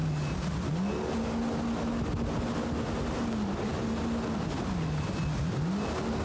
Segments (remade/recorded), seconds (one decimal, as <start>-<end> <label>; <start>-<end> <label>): 0.0-6.2 recorded